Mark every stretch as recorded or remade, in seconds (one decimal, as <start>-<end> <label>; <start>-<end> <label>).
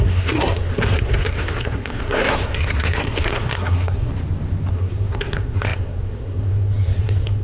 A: 0.0-4.1 remade; 4.1-4.7 recorded; 4.7-7.4 remade